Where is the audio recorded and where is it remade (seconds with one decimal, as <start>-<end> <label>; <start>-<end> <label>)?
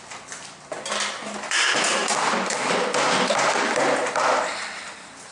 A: 0.0-5.3 recorded